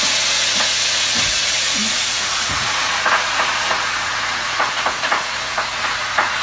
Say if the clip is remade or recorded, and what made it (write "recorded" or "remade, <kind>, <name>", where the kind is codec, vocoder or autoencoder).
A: remade, vocoder, Vocos